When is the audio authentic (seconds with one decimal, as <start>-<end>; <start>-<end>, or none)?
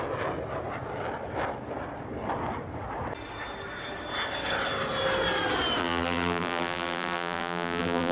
0.0-5.8